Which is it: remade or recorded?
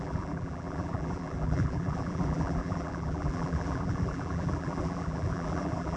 remade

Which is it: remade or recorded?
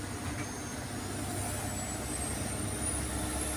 recorded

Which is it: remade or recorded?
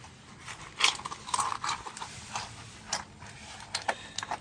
recorded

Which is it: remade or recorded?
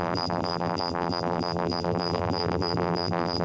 remade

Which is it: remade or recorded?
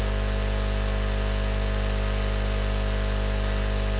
recorded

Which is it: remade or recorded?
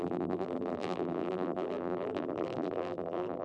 remade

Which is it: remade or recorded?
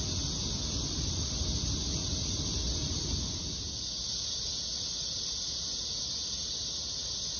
recorded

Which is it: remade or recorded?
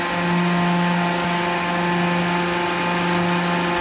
recorded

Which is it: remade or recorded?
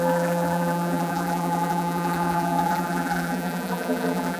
remade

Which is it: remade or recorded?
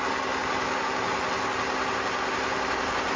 recorded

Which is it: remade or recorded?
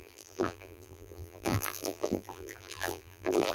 remade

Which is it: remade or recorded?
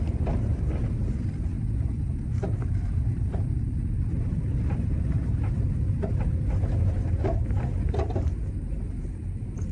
remade